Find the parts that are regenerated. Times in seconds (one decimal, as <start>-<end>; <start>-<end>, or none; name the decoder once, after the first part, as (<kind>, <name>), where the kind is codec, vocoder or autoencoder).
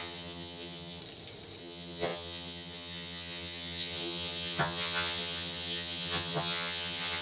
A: 0.0-1.0 (vocoder, HiFi-GAN); 1.6-7.2